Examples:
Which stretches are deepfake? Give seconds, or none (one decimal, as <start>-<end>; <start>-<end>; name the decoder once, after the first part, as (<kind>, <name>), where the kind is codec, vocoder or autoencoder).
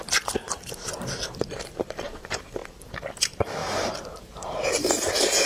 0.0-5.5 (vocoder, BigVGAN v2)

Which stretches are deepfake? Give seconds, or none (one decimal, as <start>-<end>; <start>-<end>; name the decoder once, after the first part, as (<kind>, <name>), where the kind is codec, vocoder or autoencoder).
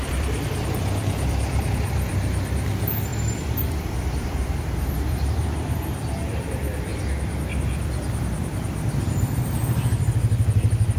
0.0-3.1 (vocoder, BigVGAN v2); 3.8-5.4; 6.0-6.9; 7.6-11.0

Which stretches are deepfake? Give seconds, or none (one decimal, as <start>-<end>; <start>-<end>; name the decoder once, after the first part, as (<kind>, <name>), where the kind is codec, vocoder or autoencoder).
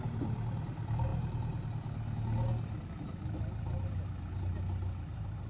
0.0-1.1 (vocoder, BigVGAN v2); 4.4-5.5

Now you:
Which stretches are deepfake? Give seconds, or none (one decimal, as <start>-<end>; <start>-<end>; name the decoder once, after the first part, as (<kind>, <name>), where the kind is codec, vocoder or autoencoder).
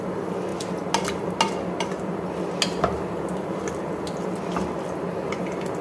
none